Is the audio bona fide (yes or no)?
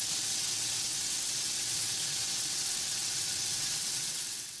no